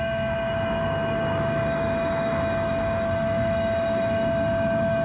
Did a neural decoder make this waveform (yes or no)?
yes